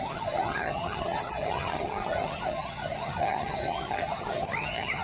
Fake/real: fake